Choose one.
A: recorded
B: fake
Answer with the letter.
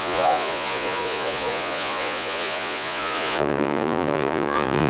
B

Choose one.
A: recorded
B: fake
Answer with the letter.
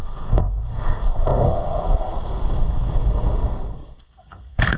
B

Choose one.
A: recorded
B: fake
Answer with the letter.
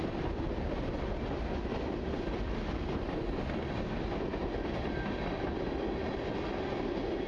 A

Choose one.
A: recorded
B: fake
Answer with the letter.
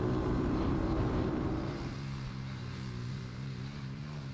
B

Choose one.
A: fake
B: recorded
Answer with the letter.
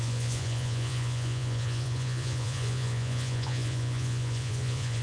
A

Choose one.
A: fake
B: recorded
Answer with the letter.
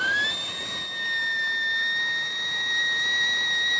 B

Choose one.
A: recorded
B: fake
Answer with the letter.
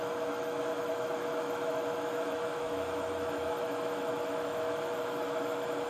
B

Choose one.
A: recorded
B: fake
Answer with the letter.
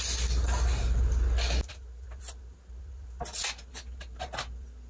A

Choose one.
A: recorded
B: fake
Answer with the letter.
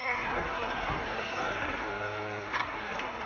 B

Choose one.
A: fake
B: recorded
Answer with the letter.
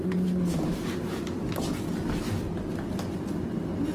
B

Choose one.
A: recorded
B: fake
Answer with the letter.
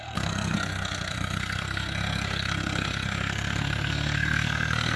B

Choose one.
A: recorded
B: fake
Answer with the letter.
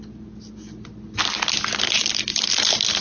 A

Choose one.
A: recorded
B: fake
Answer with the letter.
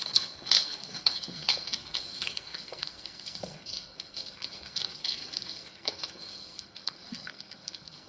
B